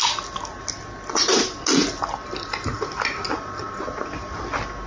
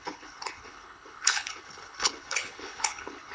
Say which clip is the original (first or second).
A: first